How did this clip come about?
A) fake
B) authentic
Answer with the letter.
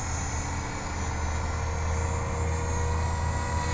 B